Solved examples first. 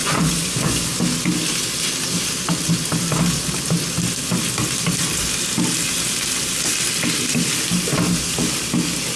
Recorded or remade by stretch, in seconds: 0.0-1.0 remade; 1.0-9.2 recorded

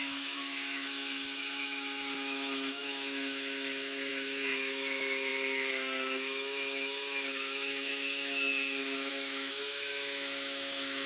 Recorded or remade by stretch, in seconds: 0.0-11.1 remade

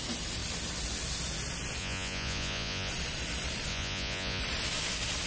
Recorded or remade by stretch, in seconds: 0.0-1.8 recorded; 1.8-2.9 remade; 2.9-3.7 recorded; 3.7-4.4 remade; 4.4-5.3 recorded

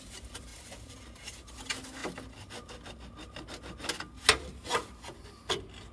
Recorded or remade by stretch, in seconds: 0.0-5.9 recorded

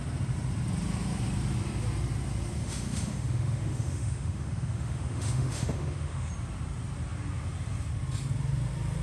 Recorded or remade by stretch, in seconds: 0.0-2.6 recorded; 2.6-6.3 remade; 6.3-9.0 recorded